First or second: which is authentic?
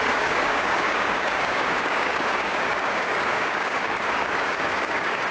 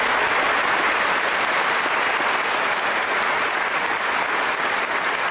second